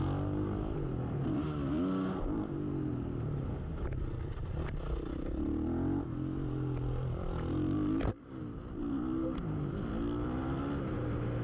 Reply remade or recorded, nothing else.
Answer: recorded